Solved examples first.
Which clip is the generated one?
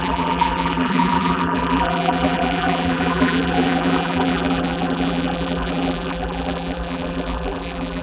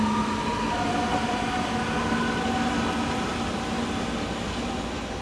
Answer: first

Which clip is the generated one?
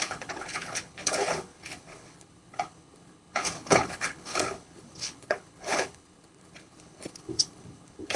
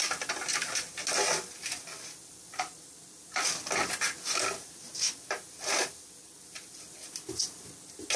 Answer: first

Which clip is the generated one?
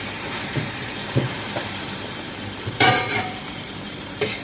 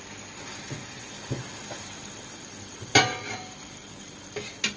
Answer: first